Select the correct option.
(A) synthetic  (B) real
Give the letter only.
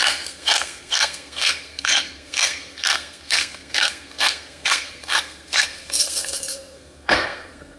A